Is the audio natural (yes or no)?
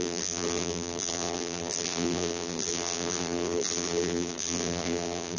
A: no